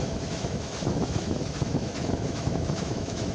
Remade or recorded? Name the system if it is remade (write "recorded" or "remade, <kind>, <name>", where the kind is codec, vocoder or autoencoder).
remade, autoencoder, DAC-VAE